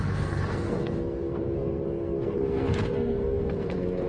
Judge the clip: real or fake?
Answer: fake